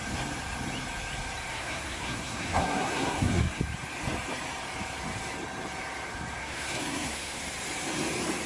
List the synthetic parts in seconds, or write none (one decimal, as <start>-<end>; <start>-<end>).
1.5-3.6; 6.4-7.4